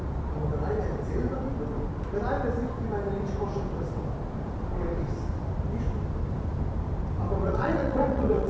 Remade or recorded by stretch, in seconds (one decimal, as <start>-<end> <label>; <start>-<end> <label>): 0.0-7.4 recorded; 7.4-8.5 remade